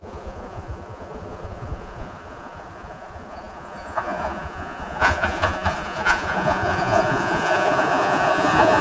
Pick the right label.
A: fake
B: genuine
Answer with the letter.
A